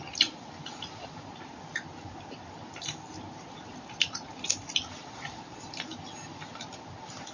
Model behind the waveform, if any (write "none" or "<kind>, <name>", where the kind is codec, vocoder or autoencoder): none